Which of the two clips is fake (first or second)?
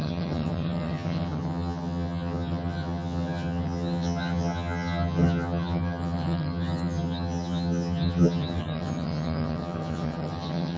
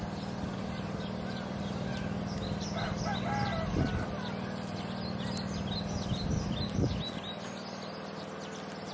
first